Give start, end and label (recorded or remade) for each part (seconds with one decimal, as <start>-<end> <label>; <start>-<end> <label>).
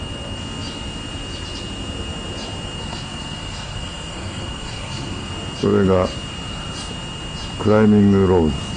0.0-2.8 recorded; 2.8-5.3 remade; 5.3-8.8 recorded